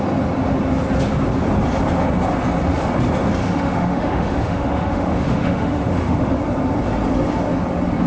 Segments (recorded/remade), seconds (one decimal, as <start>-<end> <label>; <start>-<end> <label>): 0.0-3.4 recorded; 3.4-6.4 remade; 6.4-8.1 recorded